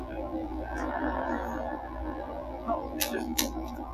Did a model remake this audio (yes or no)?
yes